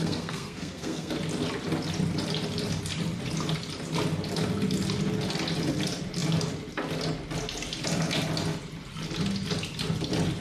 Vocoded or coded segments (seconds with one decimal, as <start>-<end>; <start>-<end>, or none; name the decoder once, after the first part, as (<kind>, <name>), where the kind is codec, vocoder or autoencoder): 0.0-1.1 (codec, SNAC)